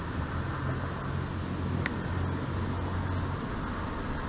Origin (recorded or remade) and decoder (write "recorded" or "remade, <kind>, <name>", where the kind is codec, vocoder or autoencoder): recorded